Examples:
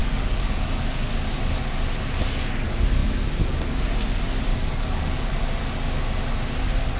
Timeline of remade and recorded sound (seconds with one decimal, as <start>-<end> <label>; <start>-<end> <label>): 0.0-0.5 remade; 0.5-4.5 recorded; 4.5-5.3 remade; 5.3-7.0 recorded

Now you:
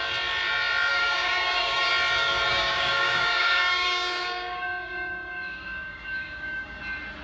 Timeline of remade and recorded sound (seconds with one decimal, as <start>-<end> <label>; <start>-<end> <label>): 0.0-0.9 recorded; 0.9-1.9 remade; 1.9-2.5 recorded; 2.5-6.8 remade; 6.8-7.2 recorded

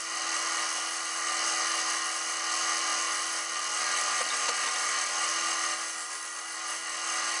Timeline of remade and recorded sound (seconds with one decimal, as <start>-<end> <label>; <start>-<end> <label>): 0.0-7.4 recorded

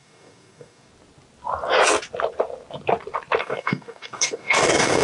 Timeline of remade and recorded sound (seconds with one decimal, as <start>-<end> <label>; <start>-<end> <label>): 0.0-0.9 remade; 0.9-3.4 recorded; 3.4-5.0 remade

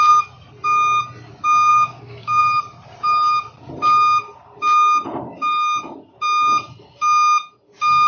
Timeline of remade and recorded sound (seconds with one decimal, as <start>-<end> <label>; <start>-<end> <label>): 0.0-1.7 recorded; 1.7-2.4 remade; 2.4-8.1 recorded

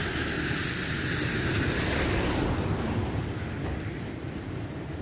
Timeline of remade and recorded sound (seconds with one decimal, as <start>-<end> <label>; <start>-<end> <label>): 0.0-5.0 recorded

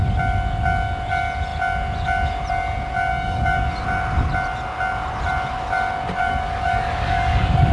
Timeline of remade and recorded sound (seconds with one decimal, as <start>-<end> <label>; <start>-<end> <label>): 0.0-3.1 recorded; 3.1-3.7 remade; 3.7-6.2 recorded; 6.2-7.7 remade